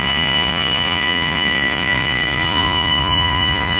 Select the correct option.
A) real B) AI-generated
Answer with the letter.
B